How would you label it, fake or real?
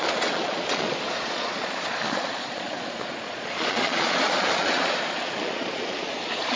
fake